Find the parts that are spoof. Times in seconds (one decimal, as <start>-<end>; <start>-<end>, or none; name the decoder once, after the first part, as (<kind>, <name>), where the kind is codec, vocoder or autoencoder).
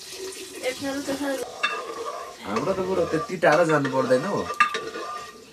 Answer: 1.5-3.0 (autoencoder, DAC-VAE)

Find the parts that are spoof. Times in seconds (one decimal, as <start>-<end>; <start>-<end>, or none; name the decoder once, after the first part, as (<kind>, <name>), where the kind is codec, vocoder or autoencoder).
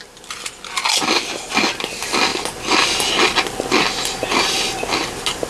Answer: none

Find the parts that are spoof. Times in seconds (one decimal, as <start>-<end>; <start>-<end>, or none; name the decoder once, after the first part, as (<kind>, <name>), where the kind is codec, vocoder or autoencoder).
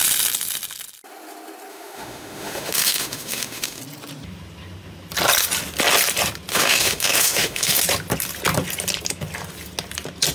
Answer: 1.7-3.8 (autoencoder, DAC-VAE); 6.5-7.8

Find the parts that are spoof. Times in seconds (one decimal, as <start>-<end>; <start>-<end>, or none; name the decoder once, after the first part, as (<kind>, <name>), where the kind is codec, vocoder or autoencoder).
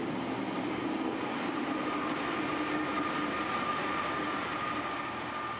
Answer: none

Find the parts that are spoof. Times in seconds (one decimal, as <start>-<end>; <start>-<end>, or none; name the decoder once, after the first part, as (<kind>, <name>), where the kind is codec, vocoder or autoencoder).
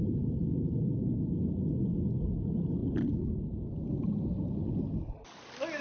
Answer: none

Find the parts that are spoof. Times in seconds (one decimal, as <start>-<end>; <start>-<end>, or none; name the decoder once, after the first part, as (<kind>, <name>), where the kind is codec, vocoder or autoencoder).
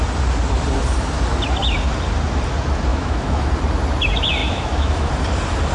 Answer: 2.9-3.5 (autoencoder, DAC-VAE); 4.4-5.1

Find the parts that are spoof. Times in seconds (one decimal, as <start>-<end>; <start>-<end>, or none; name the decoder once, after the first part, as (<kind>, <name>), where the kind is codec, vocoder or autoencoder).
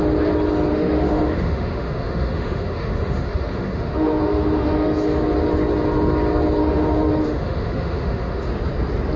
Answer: 0.7-5.2 (autoencoder, DAC-VAE); 6.6-8.5